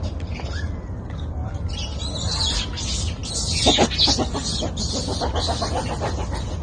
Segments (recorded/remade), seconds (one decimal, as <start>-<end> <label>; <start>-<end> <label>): 0.0-6.6 recorded